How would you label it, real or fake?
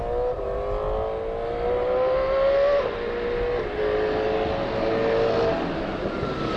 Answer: real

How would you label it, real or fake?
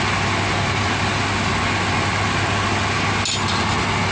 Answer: real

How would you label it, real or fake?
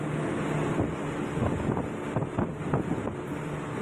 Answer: real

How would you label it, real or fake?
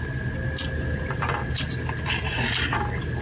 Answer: real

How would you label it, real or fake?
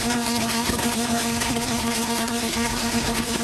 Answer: fake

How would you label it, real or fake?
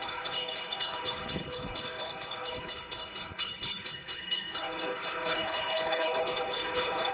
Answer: fake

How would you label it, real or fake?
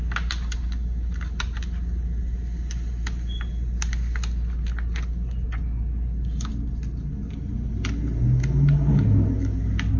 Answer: real